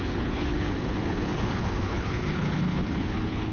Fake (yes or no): yes